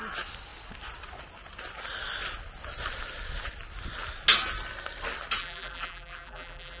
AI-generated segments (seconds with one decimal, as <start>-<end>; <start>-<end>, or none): 5.4-6.8

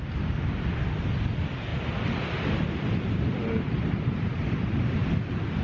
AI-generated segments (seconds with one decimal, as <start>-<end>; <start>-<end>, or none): none

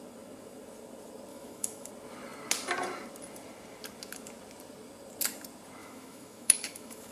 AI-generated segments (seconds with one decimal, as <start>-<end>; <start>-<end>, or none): 1.3-1.9; 5.8-7.1

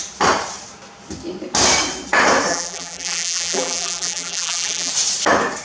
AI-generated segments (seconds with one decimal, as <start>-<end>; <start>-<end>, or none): 2.5-4.9